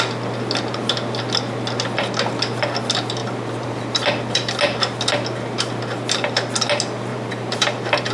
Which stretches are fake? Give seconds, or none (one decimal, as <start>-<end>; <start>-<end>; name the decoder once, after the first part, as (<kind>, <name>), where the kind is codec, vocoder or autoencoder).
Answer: 3.2-3.7 (vocoder, BigVGAN v2); 7.1-8.1